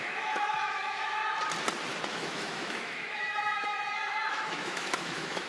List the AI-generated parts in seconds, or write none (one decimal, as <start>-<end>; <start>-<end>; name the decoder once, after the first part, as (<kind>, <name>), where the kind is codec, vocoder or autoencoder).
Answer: 0.0-1.2 (autoencoder, DAC-VAE); 2.1-3.7; 4.3-5.5